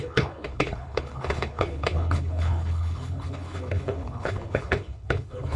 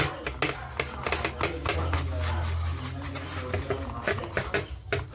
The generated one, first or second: first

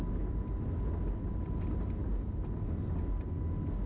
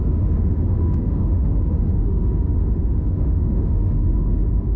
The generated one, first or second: second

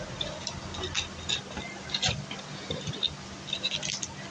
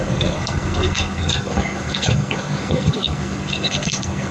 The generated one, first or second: second